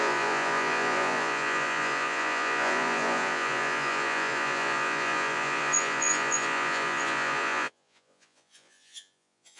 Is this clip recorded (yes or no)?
no